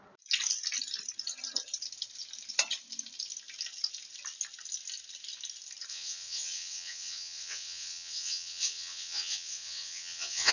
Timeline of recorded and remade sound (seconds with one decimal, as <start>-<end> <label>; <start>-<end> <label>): 0.0-5.9 recorded; 5.9-10.5 remade